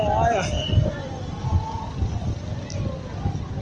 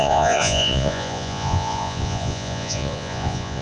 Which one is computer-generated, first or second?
second